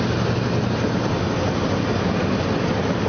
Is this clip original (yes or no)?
yes